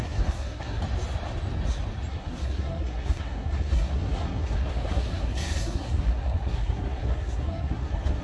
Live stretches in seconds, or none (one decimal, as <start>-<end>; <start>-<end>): 0.8-2.1